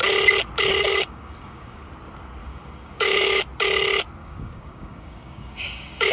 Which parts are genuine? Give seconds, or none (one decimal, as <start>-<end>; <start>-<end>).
0.0-0.9; 1.9-2.4; 3.4-4.2